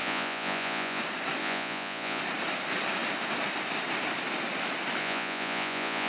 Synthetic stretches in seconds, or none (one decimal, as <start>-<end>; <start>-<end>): 0.0-1.0; 1.4-2.2; 5.0-6.1